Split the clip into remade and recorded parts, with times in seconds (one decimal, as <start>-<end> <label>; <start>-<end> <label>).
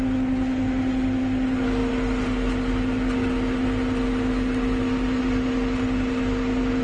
0.0-6.8 recorded